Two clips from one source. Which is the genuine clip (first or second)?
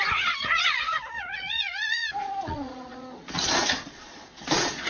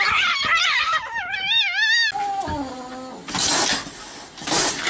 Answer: second